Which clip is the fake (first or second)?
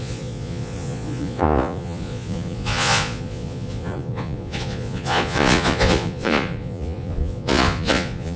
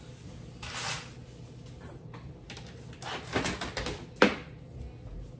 first